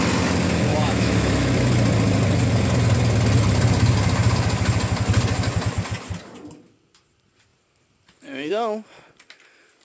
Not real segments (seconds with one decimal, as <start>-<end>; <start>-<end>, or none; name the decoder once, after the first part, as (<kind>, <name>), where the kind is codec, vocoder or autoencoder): 0.7-1.7 (autoencoder, DAC-VAE)